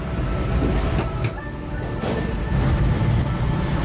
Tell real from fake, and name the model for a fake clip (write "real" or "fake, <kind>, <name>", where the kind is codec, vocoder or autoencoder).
real